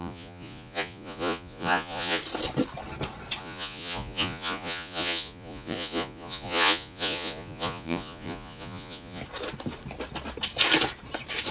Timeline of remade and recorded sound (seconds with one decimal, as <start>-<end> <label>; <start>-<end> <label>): 0.0-2.2 remade; 2.2-3.4 recorded; 3.4-9.2 remade; 9.2-11.5 recorded